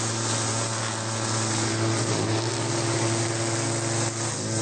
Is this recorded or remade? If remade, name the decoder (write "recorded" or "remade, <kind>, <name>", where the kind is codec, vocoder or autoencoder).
recorded